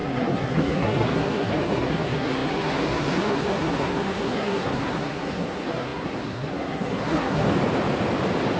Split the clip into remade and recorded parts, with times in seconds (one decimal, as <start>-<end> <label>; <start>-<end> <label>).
0.0-7.5 remade; 7.5-8.6 recorded